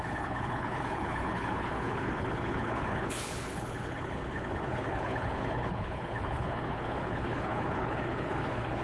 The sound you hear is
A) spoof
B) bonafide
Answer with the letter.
A